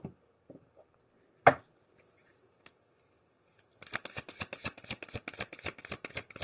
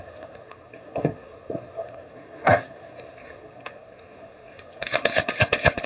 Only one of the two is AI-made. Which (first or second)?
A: second